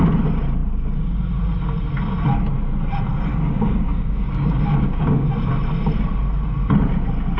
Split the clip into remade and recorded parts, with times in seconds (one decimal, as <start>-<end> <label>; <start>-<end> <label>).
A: 0.0-3.3 recorded; 3.3-5.3 remade; 5.3-7.4 recorded